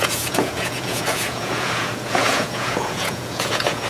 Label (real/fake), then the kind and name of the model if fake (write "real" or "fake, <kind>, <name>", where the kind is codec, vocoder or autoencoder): fake, vocoder, Vocos